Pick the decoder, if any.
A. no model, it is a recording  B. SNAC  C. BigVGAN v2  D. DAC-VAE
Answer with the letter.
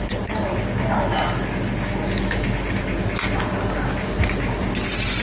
A